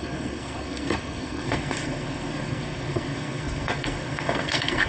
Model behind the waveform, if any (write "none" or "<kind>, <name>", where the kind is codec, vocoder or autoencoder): codec, SNAC